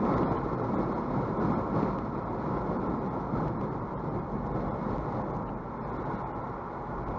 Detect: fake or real real